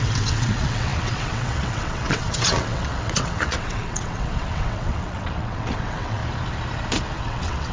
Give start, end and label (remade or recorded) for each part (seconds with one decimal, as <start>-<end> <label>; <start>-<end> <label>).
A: 0.0-6.2 remade; 6.2-7.2 recorded; 7.2-7.7 remade